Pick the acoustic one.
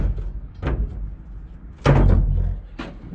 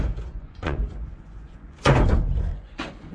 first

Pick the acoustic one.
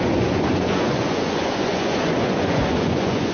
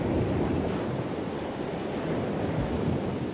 second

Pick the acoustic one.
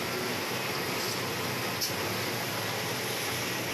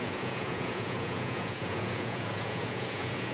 first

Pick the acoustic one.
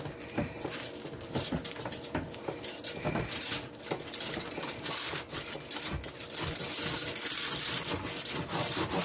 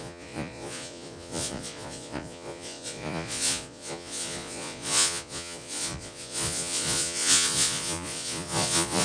first